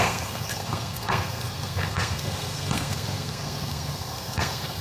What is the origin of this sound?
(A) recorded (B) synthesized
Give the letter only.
B